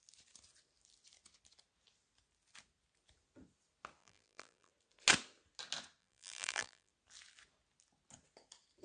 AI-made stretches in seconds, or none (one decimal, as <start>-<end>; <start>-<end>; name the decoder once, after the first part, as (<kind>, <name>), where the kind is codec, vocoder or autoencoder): 4.0-4.7 (vocoder, BigVGAN v2); 6.0-6.9